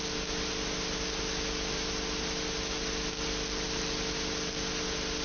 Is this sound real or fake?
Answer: real